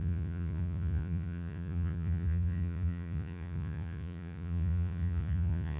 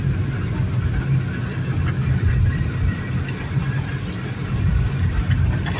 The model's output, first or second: first